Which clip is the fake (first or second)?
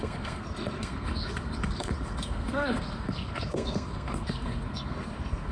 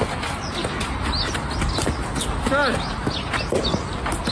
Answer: first